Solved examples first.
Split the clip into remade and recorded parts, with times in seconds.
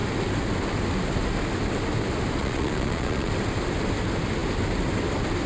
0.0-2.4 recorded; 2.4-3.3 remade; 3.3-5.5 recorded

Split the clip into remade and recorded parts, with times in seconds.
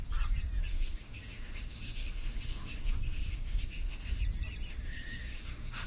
0.0-0.7 recorded; 0.7-4.2 remade; 4.2-4.7 recorded; 4.7-5.9 remade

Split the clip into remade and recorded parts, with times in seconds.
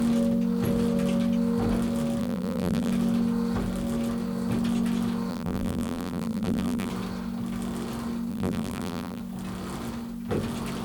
0.0-2.2 recorded; 2.2-2.9 remade; 2.9-5.3 recorded; 5.3-6.9 remade; 6.9-8.3 recorded; 8.3-9.2 remade; 9.2-10.8 recorded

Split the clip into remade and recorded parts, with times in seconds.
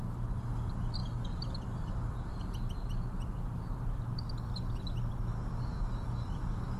0.0-6.8 recorded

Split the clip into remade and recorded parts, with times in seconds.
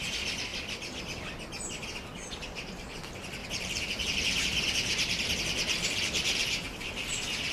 0.0-0.5 recorded; 0.5-1.0 remade; 1.0-3.4 recorded; 3.4-7.1 remade; 7.1-7.5 recorded